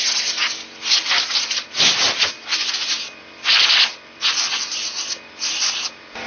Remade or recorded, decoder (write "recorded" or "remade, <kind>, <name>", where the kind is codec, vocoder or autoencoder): recorded